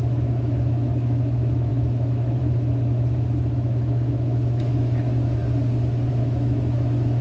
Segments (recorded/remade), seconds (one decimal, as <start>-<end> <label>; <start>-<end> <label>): 0.0-5.4 remade; 5.4-6.1 recorded; 6.1-7.2 remade